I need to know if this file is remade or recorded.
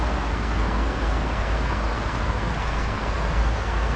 remade